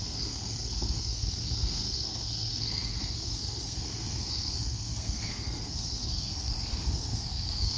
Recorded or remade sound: remade